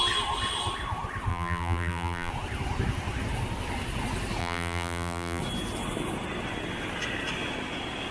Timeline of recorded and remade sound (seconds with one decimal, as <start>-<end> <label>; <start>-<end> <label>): 0.0-1.3 recorded; 1.3-2.3 remade; 2.3-4.4 recorded; 4.4-5.4 remade; 5.4-8.1 recorded